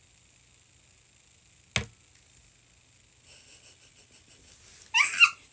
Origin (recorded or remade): recorded